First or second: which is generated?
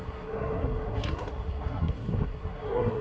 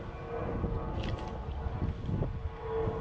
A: first